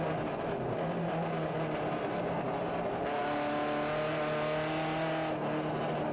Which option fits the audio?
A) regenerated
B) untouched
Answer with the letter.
B